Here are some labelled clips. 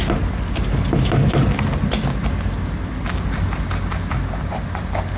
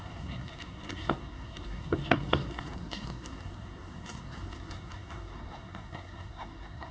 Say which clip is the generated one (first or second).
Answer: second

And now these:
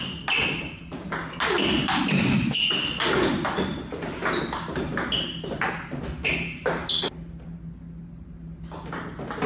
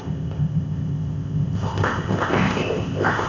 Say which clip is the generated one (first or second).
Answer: second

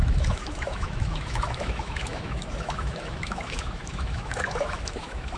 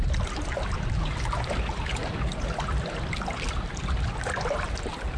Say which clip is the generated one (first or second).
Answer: first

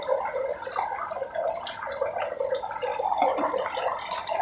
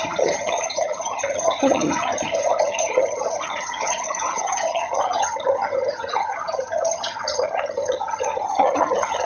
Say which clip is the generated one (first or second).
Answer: second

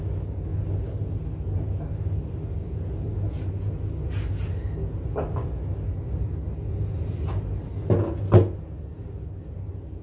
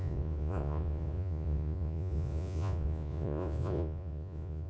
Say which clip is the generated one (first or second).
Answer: second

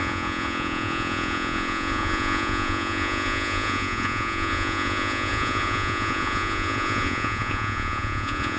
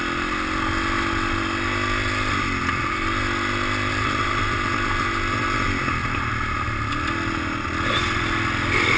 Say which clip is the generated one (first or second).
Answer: first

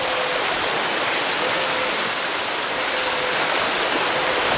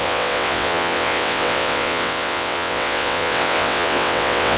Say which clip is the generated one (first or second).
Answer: second